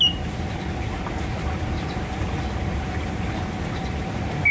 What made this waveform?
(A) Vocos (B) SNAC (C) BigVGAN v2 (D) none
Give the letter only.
D